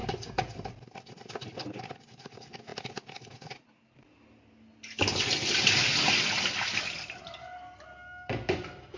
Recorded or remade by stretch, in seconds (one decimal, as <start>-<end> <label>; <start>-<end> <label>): 0.0-9.0 recorded